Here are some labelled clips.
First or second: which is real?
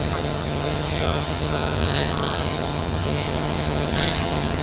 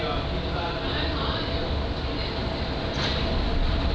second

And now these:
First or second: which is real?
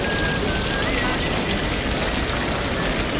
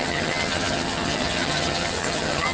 first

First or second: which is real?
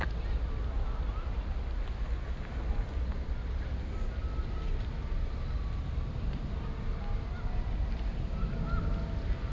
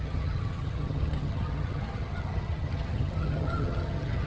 first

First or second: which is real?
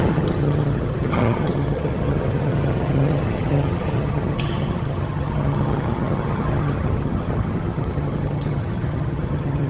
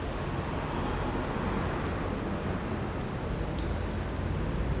second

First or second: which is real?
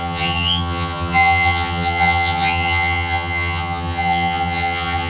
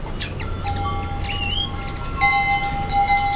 second